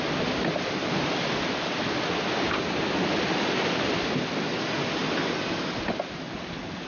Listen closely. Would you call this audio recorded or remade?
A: recorded